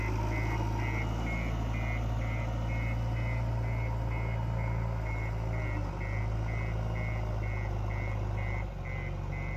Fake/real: real